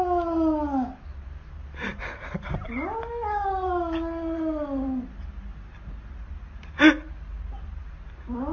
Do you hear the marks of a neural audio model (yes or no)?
no